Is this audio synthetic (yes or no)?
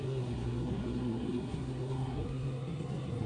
yes